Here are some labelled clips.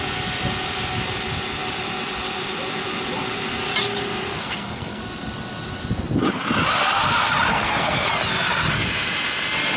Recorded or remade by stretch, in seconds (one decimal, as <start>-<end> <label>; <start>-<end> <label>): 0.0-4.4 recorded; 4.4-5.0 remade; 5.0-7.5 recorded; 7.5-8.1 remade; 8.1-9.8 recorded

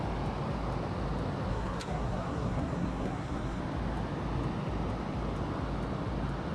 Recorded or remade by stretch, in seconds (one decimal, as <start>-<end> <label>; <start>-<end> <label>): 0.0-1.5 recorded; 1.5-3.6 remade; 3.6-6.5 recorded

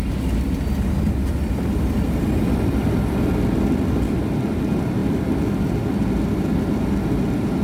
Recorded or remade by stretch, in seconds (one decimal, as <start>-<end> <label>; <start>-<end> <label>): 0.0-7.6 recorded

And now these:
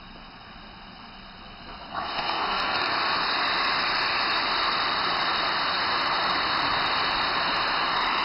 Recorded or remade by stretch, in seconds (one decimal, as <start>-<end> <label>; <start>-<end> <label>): 0.0-1.9 recorded; 1.9-2.9 remade; 2.9-8.2 recorded

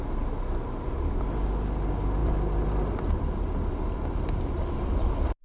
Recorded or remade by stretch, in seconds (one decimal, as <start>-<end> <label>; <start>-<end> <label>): 0.0-5.4 recorded